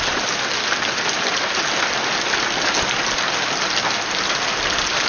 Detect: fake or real real